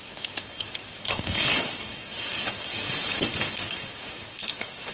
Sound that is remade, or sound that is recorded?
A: remade